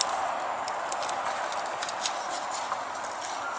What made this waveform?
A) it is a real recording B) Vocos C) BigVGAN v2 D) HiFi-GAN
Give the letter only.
A